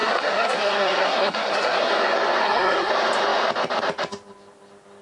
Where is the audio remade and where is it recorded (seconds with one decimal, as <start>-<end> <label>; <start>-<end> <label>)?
0.0-1.9 remade; 1.9-2.4 recorded; 2.4-2.9 remade; 2.9-5.0 recorded

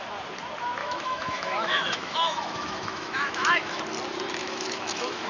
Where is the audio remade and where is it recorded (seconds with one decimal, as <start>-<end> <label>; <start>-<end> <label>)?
0.0-0.8 recorded; 0.8-3.8 remade; 3.8-4.4 recorded; 4.4-5.3 remade

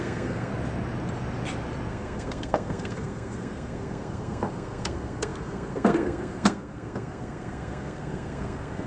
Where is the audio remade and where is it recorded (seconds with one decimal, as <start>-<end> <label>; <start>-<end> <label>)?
0.0-0.5 remade; 0.5-1.9 recorded; 1.9-8.9 remade

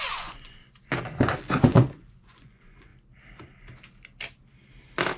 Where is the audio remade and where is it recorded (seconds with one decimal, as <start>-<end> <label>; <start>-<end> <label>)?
0.0-0.6 remade; 0.6-1.5 recorded; 1.5-2.9 remade; 2.9-5.2 recorded